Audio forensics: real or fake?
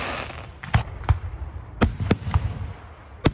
real